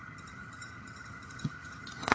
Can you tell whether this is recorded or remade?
remade